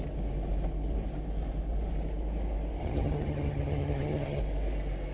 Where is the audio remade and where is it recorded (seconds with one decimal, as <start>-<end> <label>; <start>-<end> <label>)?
0.0-2.8 recorded; 2.8-4.4 remade; 4.4-5.1 recorded